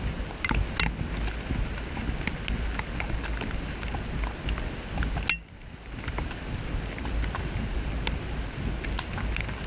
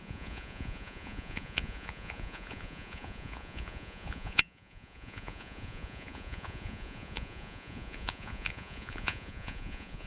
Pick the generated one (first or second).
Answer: second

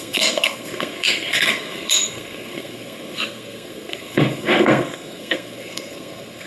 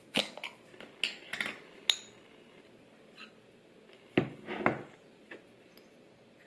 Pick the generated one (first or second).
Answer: first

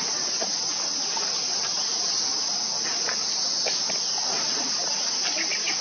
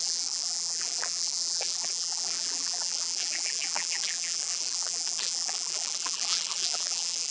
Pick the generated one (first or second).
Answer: second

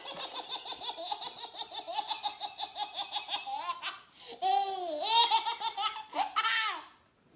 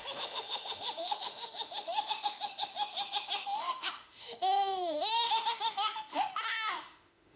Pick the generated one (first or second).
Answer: second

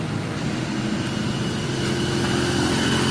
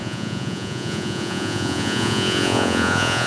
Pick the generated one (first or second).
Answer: second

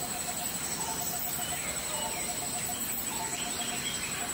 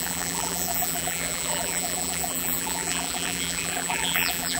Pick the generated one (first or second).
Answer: second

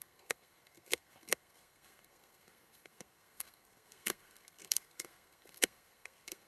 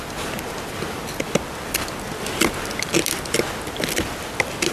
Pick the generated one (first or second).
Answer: first